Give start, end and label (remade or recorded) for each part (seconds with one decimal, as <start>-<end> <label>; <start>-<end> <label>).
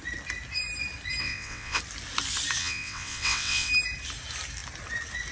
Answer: 0.0-1.2 recorded; 1.2-1.8 remade; 1.8-2.6 recorded; 2.6-3.7 remade; 3.7-5.3 recorded